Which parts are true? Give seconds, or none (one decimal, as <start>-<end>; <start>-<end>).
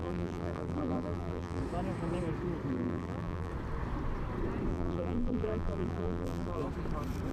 1.6-2.7; 3.5-4.7; 6.6-7.3